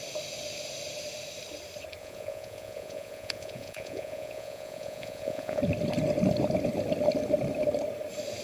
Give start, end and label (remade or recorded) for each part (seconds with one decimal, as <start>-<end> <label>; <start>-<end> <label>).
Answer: 0.0-2.0 recorded; 2.0-5.6 remade; 5.6-8.4 recorded